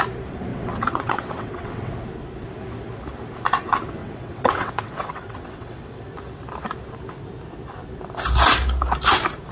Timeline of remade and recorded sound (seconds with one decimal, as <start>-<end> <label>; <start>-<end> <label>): 0.0-0.5 recorded; 0.5-1.9 remade; 1.9-4.0 recorded; 4.0-6.0 remade; 6.0-9.5 recorded